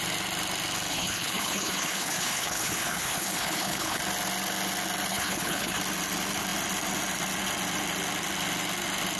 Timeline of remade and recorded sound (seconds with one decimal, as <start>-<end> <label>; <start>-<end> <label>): 0.0-0.9 recorded; 0.9-4.0 remade; 4.0-5.1 recorded; 5.1-5.8 remade; 5.8-9.2 recorded